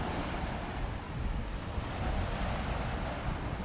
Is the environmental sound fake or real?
real